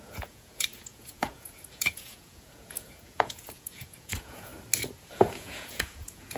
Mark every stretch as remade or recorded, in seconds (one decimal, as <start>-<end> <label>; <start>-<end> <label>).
0.0-4.5 remade; 4.5-5.1 recorded; 5.1-6.4 remade